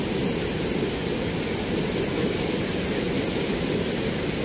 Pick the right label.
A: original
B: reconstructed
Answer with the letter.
A